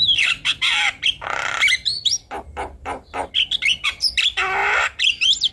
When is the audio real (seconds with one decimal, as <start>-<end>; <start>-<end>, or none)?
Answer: 3.3-4.6